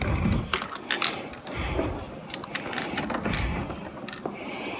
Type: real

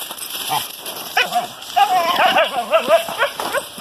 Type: real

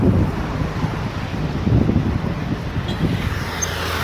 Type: real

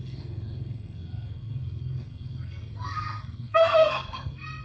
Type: fake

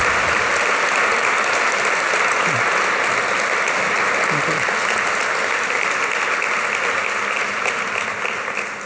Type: real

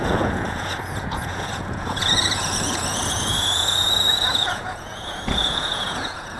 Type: fake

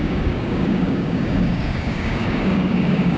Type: fake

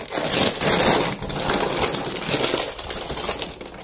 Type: real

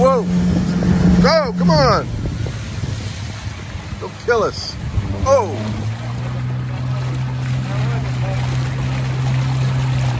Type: real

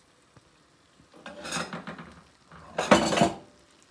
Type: real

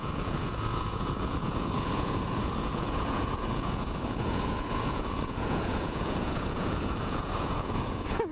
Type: fake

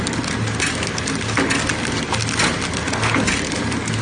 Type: real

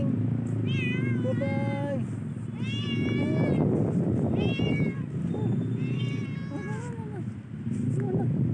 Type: real